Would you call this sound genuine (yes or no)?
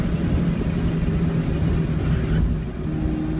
yes